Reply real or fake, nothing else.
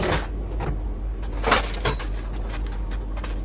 real